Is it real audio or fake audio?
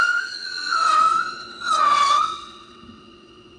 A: fake